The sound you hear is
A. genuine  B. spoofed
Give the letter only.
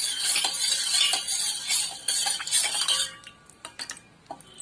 A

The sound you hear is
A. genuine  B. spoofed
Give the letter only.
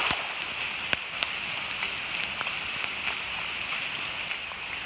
A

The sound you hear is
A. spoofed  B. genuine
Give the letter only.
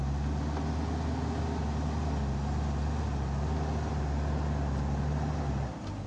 B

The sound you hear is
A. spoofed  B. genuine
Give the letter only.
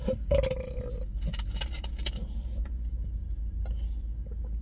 B